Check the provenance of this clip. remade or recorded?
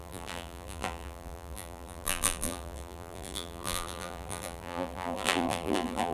remade